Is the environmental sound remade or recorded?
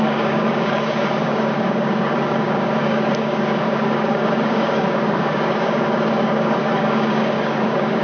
remade